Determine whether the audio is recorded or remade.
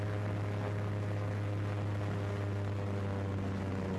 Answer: recorded